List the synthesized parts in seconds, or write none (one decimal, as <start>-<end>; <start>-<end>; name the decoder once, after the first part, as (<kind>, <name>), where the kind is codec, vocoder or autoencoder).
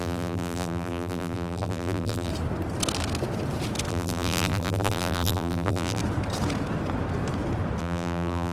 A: 0.0-2.3 (vocoder, BigVGAN v2); 3.9-6.0; 7.8-8.5